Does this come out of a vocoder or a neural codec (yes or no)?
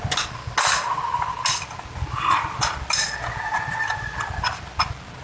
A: no